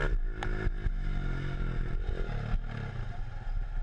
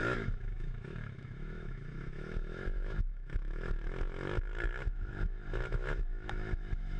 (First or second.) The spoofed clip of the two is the second